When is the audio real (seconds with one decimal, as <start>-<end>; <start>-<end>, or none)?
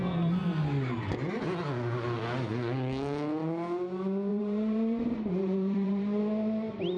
0.0-0.4; 1.4-4.3; 6.2-7.0